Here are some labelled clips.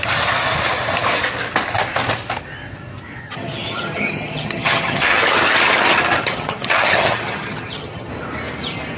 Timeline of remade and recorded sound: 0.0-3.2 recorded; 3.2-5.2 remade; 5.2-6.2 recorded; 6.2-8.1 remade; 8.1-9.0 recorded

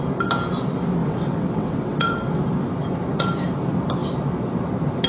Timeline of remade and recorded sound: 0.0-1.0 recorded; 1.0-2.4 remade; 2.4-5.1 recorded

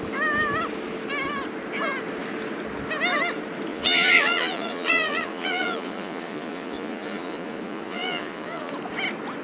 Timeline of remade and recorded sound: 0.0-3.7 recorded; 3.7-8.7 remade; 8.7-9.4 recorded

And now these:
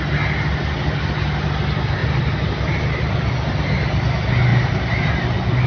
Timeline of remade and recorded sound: 0.0-2.0 recorded; 2.0-2.8 remade; 2.8-4.5 recorded; 4.5-5.1 remade; 5.1-5.7 recorded

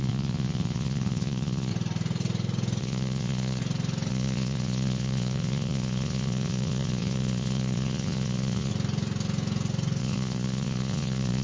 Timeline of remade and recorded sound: 0.0-1.7 remade; 1.7-2.8 recorded; 2.8-3.6 remade; 3.6-4.1 recorded; 4.1-8.7 remade; 8.7-10.0 recorded; 10.0-11.4 remade